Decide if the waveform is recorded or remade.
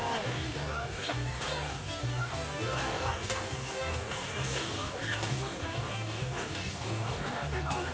remade